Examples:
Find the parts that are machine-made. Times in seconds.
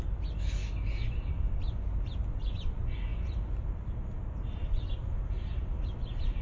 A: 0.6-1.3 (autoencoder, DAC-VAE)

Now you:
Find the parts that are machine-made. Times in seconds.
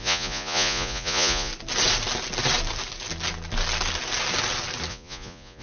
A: 0.0-1.5 (vocoder, Vocos); 4.9-5.6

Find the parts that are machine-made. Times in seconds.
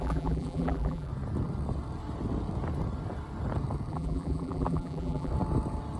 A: 0.0-1.1 (vocoder, BigVGAN v2); 3.9-5.3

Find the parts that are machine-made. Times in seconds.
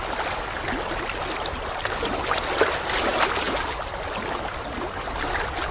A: none